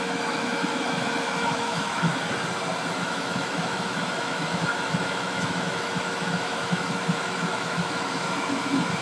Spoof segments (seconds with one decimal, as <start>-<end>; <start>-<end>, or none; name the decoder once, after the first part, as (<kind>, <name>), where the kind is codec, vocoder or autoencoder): 0.0-2.1 (autoencoder, DAC-VAE); 2.9-9.0